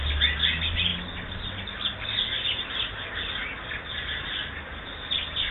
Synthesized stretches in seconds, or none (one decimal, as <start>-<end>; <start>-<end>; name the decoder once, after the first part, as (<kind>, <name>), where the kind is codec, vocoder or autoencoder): none